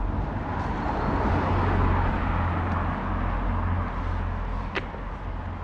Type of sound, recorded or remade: recorded